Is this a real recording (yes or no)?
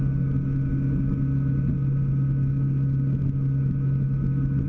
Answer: yes